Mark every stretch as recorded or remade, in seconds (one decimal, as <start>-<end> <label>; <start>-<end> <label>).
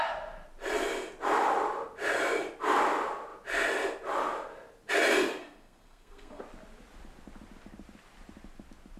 0.0-5.4 recorded; 5.4-6.4 remade; 6.4-9.0 recorded